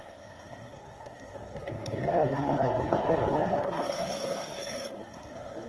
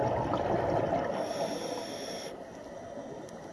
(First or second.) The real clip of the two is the second